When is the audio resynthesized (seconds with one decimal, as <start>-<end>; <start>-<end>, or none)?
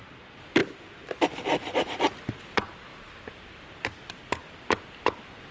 none